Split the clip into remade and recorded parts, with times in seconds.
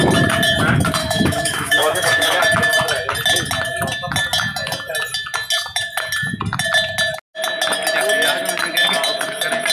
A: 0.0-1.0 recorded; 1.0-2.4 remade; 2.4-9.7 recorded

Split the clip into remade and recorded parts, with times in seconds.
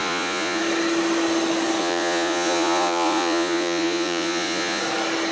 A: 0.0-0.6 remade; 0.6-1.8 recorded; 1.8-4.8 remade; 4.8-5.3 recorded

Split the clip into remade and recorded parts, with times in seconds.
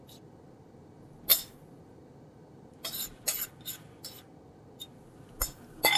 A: 0.0-6.0 recorded